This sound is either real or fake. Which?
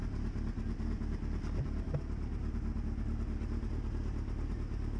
real